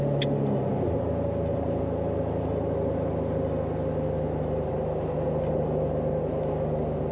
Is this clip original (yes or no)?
yes